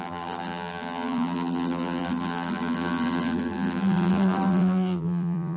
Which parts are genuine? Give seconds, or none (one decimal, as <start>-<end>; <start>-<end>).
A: none